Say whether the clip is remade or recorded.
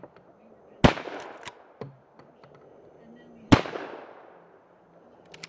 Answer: recorded